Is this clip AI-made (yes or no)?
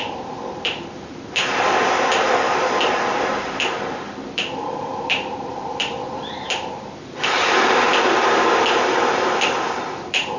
yes